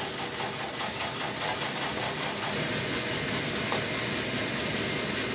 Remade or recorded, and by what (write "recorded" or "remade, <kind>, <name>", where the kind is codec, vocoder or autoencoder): recorded